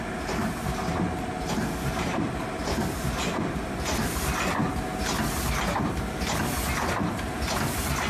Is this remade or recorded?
recorded